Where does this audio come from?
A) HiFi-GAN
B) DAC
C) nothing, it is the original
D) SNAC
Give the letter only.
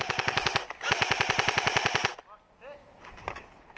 C